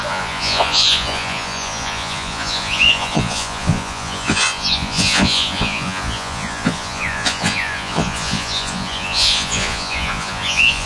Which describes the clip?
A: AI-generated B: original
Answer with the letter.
A